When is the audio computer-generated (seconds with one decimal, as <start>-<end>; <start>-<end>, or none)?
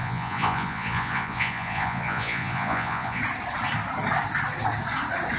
0.0-3.2